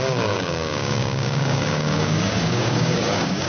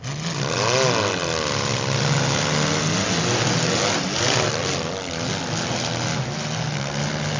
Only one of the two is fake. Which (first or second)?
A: first